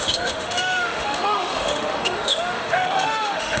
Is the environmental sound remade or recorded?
remade